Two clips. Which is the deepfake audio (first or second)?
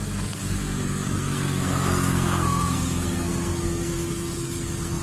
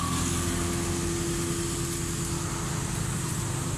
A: first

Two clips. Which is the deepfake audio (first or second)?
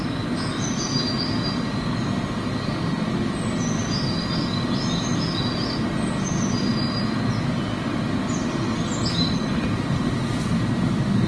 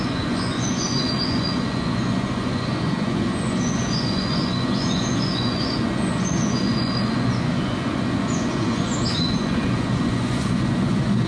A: second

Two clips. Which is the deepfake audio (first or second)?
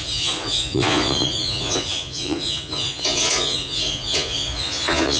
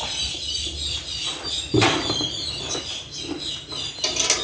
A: first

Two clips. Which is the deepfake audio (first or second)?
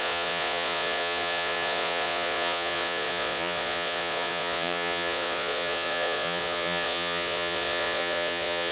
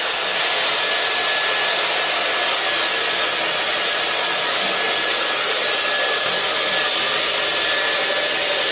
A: first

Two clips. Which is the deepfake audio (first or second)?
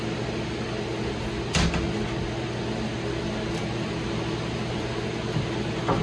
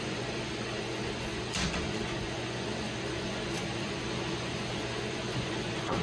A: second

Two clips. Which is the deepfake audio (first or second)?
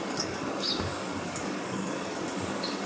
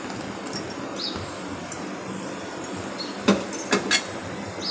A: first